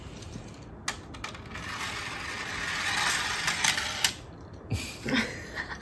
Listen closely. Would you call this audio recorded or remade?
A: recorded